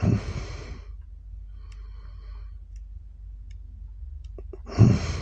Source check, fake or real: real